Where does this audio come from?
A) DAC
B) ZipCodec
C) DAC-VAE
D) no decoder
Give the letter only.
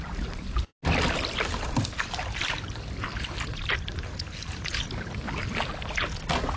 D